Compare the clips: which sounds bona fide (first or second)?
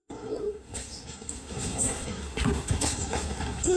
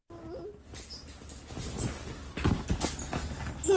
second